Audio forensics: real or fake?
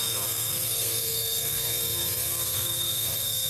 fake